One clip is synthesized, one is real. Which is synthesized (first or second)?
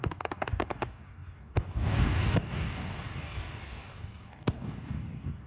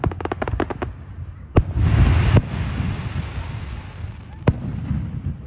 first